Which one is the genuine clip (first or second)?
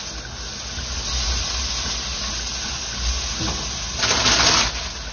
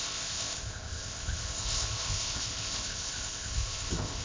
first